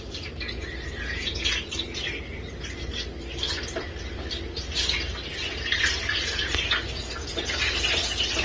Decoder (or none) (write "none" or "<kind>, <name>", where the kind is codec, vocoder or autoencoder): none